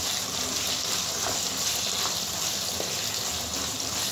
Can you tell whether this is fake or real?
real